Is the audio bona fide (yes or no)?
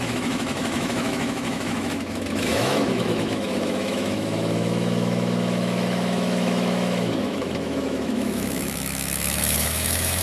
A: no